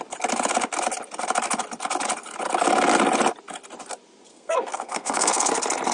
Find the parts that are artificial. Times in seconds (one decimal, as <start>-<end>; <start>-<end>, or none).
4.3-5.5